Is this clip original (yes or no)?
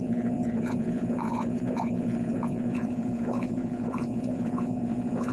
no